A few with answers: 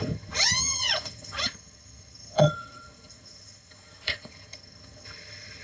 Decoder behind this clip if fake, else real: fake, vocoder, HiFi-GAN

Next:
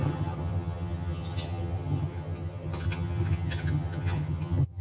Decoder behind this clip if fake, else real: fake, vocoder, HiFi-GAN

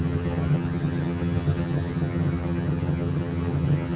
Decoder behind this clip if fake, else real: fake, vocoder, HiFi-GAN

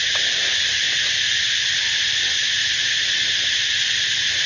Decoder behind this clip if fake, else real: real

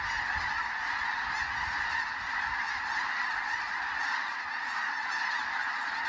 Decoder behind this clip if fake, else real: real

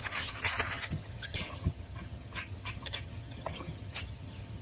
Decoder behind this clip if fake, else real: fake, vocoder, HiFi-GAN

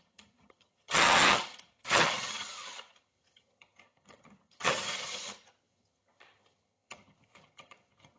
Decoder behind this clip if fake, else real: fake, vocoder, HiFi-GAN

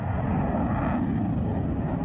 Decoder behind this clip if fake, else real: real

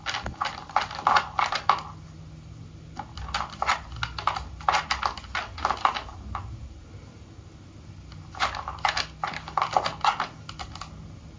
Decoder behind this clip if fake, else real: real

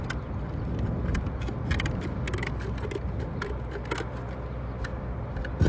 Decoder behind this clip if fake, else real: real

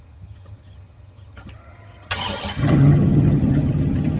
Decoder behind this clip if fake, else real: fake, vocoder, HiFi-GAN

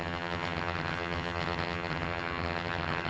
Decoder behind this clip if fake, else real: fake, vocoder, HiFi-GAN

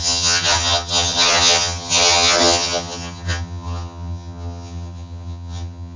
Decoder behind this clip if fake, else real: fake, vocoder, HiFi-GAN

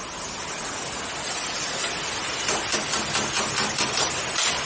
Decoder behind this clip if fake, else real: real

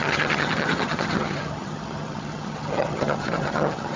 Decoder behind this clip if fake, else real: fake, vocoder, HiFi-GAN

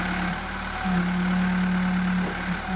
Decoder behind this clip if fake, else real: real